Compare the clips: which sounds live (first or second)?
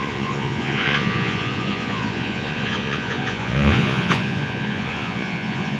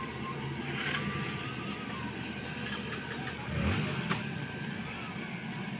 second